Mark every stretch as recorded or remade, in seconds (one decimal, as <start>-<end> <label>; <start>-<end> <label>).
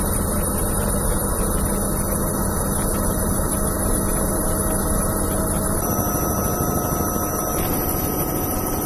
0.0-2.9 recorded; 2.9-3.5 remade; 3.5-8.9 recorded